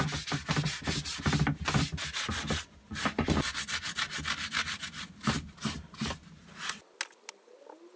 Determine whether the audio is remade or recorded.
recorded